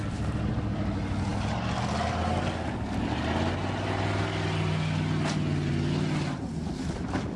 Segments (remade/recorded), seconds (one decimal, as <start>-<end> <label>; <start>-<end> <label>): 0.0-7.4 recorded